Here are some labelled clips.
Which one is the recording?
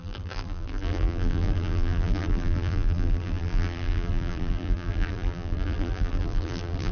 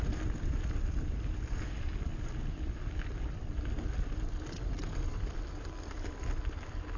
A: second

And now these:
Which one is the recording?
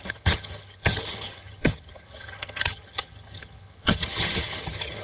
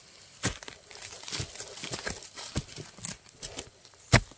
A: second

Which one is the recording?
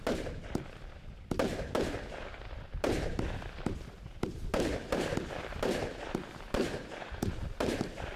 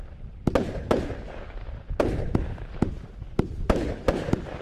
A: second